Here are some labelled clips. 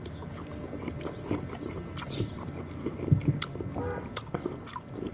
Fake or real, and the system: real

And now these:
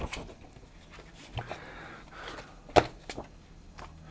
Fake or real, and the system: real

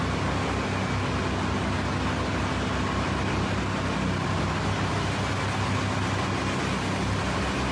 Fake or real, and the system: real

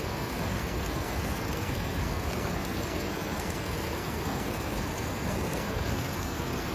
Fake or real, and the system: fake, codec, SNAC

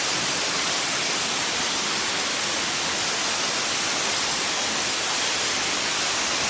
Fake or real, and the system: real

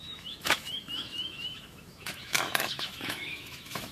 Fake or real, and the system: fake, autoencoder, DAC-VAE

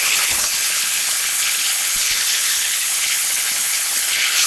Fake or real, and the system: fake, codec, HILCodec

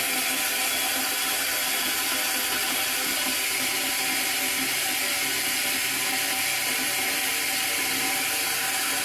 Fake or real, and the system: real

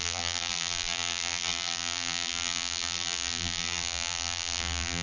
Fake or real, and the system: fake, vocoder, BigVGAN v2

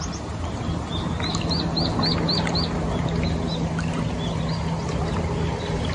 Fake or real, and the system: real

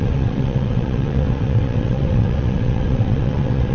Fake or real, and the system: fake, vocoder, WaveNeXt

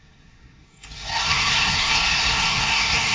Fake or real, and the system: fake, codec, SNAC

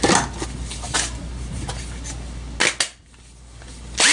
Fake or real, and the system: real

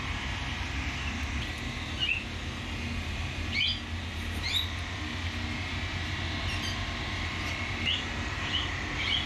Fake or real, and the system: real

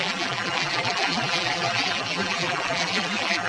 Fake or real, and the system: fake, vocoder, BigVGAN v2